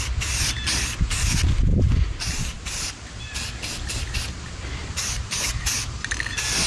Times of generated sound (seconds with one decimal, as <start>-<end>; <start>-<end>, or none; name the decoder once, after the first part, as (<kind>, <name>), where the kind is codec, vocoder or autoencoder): 1.7-2.7 (vocoder, BigVGAN v2); 4.8-6.1